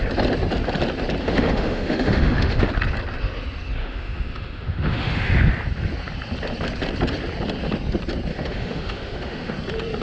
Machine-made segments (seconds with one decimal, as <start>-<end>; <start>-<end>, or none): 1.2-2.7; 3.8-5.3; 8.3-9.5